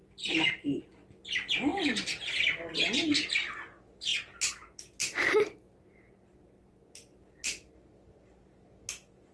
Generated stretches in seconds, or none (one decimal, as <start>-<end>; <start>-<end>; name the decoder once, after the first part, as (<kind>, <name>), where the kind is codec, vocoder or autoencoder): 0.0-0.8 (vocoder, BigVGAN v2); 1.7-2.3